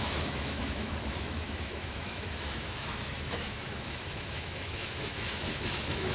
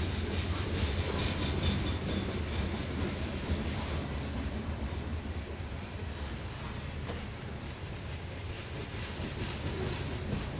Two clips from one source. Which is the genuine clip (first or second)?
second